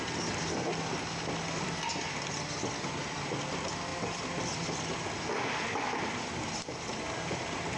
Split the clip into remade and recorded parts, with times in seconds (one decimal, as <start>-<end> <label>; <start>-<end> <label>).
0.0-7.8 recorded